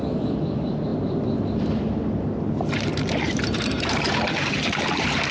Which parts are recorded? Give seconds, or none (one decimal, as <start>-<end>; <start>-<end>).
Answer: 0.0-2.9